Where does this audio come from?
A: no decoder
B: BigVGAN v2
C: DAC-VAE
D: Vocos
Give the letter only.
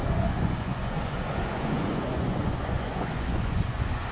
D